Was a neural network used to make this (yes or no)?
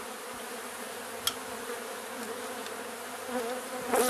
no